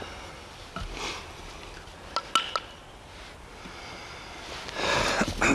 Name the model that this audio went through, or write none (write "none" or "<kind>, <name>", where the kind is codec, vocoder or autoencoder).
none